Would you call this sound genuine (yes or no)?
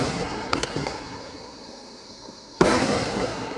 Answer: no